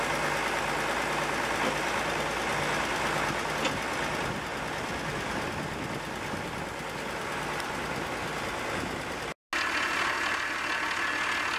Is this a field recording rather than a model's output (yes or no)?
yes